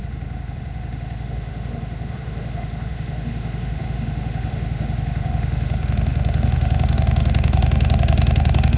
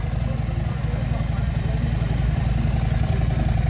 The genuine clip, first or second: second